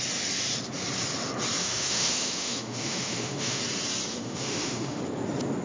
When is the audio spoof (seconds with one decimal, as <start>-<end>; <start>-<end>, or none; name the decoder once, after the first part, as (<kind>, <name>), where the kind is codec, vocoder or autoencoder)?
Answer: 1.6-3.6 (autoencoder, DAC-VAE); 4.1-5.0